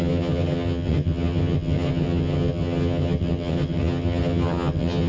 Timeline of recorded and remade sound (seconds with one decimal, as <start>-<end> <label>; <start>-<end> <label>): 0.0-5.1 remade